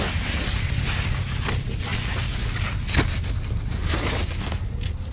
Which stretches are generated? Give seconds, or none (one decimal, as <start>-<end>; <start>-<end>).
none